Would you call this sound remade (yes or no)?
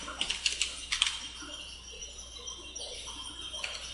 no